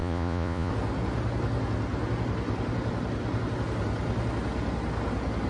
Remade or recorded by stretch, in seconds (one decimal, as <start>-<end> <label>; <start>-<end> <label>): 0.0-0.7 remade; 0.7-5.5 recorded